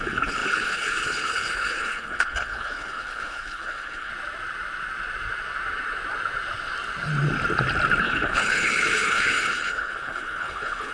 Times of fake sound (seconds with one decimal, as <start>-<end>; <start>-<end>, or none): 0.0-4.1; 8.0-10.9